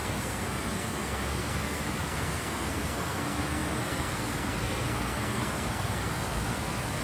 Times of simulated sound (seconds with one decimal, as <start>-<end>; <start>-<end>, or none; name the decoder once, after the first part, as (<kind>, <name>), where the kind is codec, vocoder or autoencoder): 0.0-7.0 (codec, SNAC)